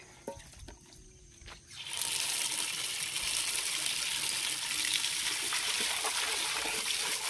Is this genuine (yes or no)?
yes